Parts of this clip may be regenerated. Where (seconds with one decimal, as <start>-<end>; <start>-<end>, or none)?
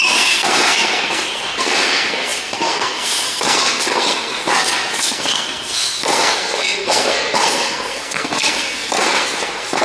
0.0-9.8